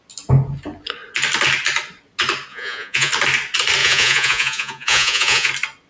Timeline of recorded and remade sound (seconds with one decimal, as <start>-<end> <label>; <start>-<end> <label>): 0.0-2.5 recorded; 2.5-3.1 remade; 3.1-3.8 recorded; 3.8-5.5 remade; 5.5-5.9 recorded